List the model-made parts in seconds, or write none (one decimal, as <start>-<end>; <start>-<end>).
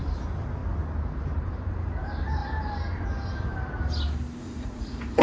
4.4-5.2